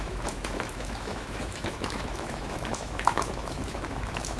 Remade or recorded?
remade